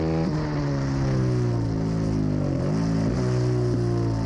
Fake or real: real